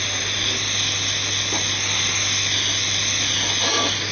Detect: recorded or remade recorded